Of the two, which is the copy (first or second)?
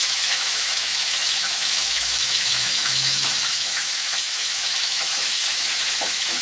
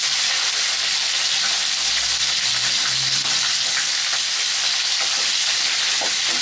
first